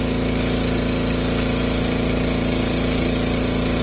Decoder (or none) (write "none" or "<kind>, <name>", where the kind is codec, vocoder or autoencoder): none